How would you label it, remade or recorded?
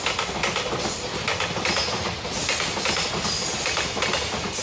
recorded